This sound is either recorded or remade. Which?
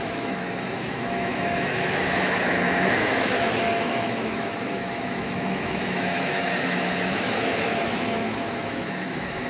remade